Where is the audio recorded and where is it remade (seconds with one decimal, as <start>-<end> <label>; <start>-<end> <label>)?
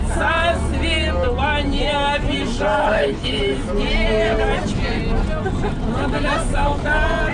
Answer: 0.0-2.8 recorded; 2.8-3.4 remade; 3.4-7.3 recorded